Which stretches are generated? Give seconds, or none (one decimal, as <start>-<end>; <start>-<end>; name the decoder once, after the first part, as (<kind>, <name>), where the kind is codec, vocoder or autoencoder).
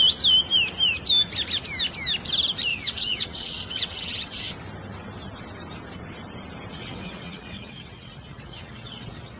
2.7-4.5 (vocoder, WaveNeXt); 6.7-9.4